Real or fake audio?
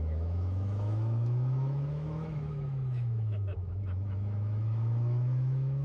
fake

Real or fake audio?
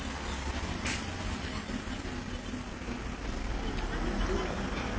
real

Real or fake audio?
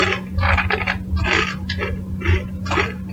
real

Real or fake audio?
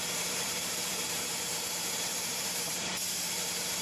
fake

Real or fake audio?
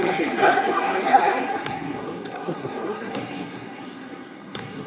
fake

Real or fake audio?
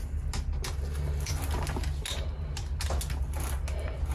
real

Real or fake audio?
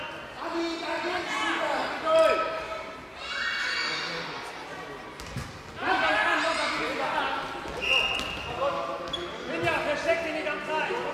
real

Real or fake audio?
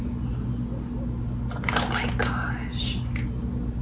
real